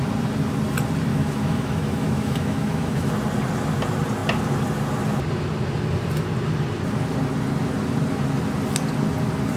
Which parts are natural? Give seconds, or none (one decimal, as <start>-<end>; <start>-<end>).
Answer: 0.0-1.1; 3.1-9.6